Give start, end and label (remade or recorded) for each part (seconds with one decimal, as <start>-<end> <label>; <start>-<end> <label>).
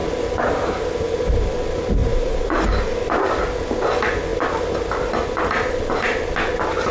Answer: 0.0-2.0 recorded; 2.0-2.6 remade; 2.6-6.9 recorded